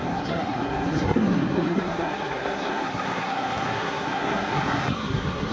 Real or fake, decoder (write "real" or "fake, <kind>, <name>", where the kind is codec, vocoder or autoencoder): fake, codec, SNAC